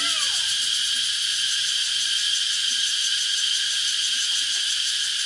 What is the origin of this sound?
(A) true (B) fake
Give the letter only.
B